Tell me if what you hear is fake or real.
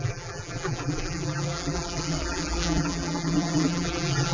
fake